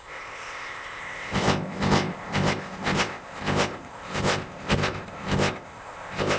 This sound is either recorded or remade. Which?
remade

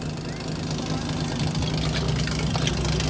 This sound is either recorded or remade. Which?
recorded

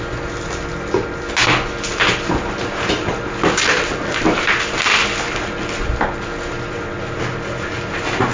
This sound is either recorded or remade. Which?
recorded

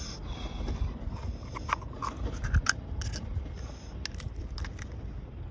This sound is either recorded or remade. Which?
recorded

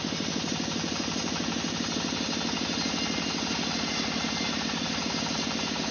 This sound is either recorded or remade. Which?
recorded